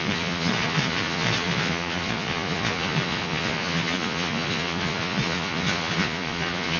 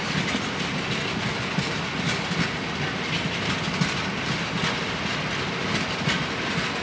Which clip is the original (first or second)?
second